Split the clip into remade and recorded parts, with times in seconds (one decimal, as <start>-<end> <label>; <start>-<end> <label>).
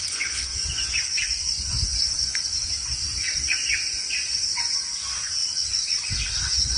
0.0-5.4 remade; 5.4-6.3 recorded; 6.3-6.8 remade